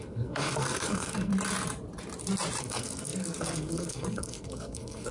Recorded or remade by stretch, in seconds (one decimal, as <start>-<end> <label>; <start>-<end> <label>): 0.0-1.3 remade; 1.3-2.6 recorded; 2.6-5.1 remade